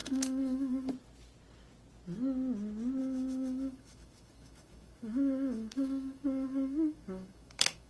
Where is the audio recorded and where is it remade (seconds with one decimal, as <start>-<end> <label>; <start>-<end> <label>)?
0.0-0.9 remade; 0.9-3.0 recorded; 3.0-7.9 remade